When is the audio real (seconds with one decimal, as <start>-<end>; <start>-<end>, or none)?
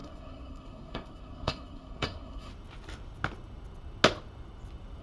2.5-5.0